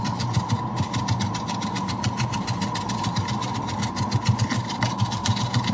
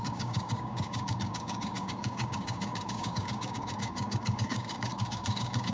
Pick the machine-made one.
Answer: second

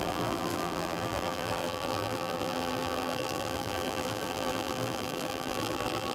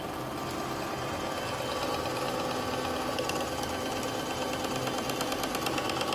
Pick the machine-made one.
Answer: first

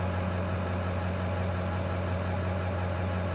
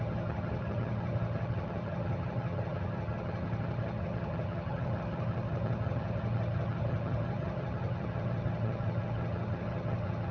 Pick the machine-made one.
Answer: second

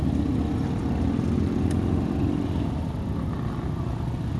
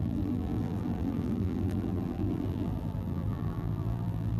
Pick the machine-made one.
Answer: second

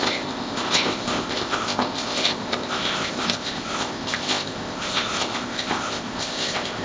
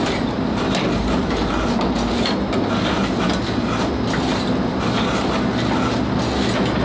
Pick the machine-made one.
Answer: first